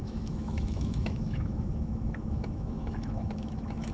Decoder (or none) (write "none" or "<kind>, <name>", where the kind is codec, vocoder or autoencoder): autoencoder, DAC-VAE